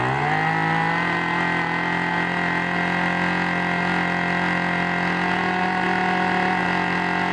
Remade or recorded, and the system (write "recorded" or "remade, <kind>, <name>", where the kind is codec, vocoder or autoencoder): recorded